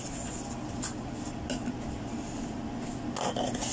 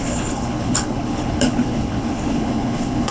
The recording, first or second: first